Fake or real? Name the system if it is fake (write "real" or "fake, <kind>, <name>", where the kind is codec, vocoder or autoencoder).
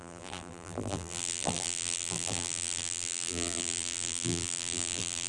fake, vocoder, BigVGAN v2